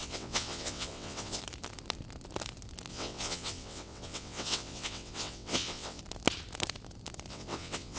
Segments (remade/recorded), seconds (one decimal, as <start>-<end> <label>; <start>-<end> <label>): 0.0-1.4 remade; 1.4-2.9 recorded; 2.9-6.0 remade; 6.0-7.3 recorded; 7.3-8.0 remade